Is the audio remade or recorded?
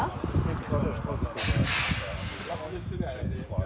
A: recorded